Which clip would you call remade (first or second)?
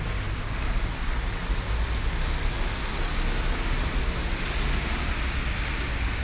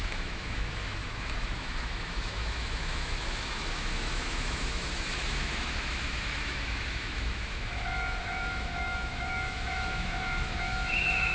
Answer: second